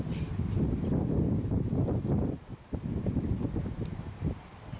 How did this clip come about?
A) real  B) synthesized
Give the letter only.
A